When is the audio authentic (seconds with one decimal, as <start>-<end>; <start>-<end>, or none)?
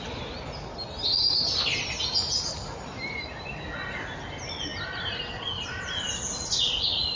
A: 0.0-7.2